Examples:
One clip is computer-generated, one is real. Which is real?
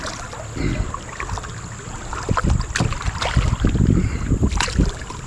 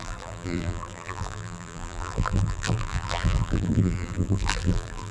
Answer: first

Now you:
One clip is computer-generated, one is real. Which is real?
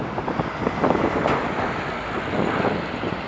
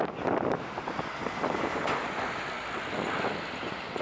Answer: second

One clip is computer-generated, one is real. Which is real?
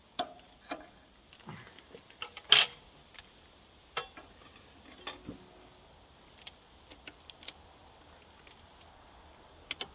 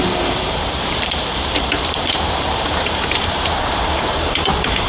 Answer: first